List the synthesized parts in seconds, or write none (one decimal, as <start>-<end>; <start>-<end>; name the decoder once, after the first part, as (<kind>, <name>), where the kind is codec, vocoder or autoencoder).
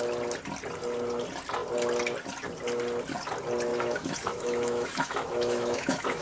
3.7-6.2 (autoencoder, DAC-VAE)